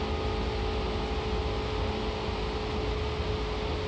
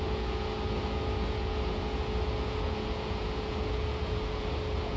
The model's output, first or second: second